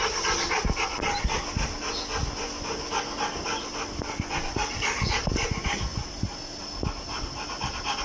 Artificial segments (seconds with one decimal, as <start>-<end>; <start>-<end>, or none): none